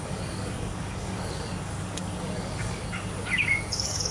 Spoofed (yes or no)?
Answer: yes